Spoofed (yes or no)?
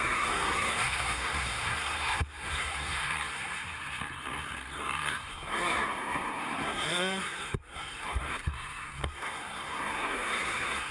yes